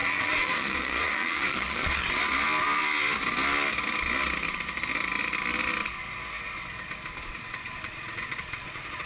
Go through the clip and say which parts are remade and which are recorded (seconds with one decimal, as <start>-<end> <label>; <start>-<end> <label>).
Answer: 0.0-2.2 remade; 2.2-7.6 recorded; 7.6-9.1 remade